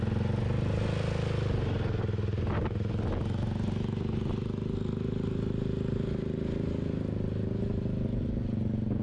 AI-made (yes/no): no